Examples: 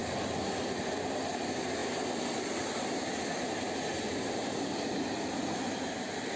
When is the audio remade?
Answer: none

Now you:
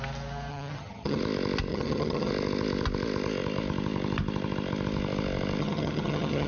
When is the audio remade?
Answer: 0.5-1.2 (vocoder, HiFi-GAN); 1.7-2.3; 5.6-6.5

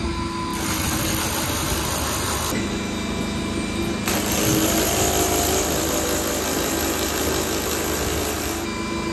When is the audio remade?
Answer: none

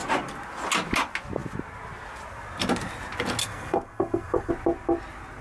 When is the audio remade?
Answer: 3.4-4.5 (codec, SNAC)

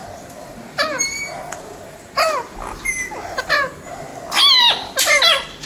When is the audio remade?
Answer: 0.0-4.1 (vocoder, BigVGAN v2); 5.0-5.7

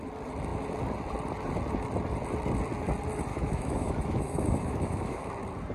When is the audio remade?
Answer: 3.3-5.3 (autoencoder, DAC-VAE)

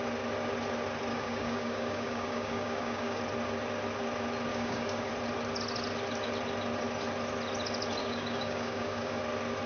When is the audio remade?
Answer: 1.1-3.2 (codec, DAC); 4.5-5.1; 8.0-9.2